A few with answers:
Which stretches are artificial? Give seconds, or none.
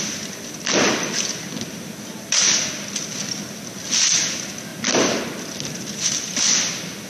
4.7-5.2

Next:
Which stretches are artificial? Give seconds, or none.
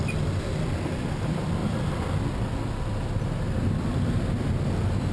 0.0-1.6; 3.8-5.1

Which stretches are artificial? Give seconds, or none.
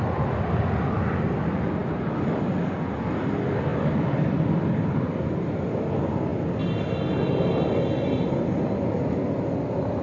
1.8-3.1; 3.7-5.1; 6.3-6.9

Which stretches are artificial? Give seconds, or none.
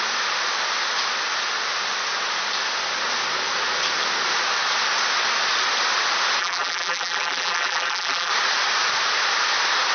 6.4-8.3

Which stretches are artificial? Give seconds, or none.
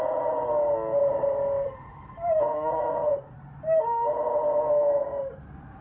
1.0-2.4; 3.1-4.6; 5.0-5.8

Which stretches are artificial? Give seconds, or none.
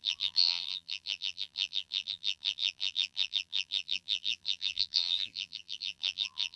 0.0-6.6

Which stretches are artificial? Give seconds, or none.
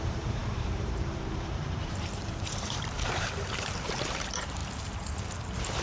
0.0-4.6